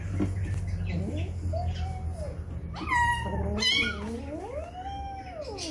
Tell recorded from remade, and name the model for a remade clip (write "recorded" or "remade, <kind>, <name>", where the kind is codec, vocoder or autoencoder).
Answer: recorded